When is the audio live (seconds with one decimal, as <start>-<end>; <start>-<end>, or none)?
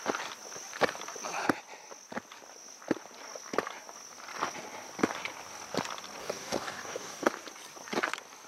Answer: 0.0-6.2; 7.3-8.5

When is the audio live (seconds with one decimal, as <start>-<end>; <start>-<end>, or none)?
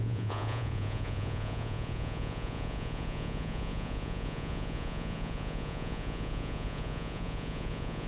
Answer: none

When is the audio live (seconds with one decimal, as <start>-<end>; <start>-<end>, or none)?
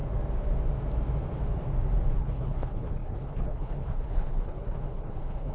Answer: 0.0-2.2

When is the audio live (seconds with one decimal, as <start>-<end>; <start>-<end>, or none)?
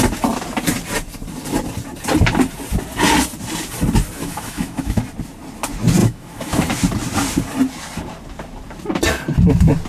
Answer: 0.0-4.2; 5.0-6.0; 6.6-9.9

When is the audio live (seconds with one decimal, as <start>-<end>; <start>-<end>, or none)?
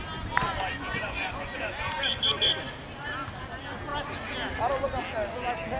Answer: 0.0-0.7; 2.2-5.8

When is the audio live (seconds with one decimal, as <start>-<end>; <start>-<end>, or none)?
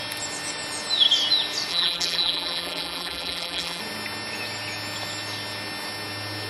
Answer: 0.0-1.7; 3.8-6.5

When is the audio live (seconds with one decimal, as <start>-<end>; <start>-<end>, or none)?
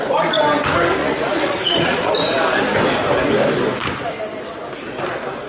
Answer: 0.0-1.0; 2.1-5.5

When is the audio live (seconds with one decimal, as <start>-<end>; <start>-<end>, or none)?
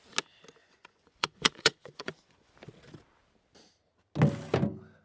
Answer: 0.0-0.6; 2.5-5.0